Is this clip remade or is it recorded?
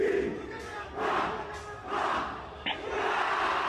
recorded